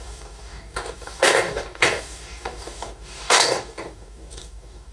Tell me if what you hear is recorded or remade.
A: remade